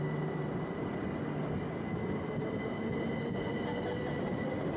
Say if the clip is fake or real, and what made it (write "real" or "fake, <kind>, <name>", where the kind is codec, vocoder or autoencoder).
real